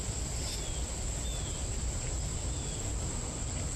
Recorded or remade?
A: recorded